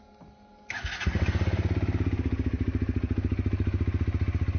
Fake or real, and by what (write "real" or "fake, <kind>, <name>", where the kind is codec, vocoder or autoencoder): real